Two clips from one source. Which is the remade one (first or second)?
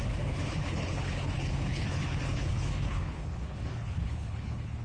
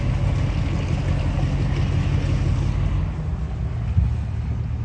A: first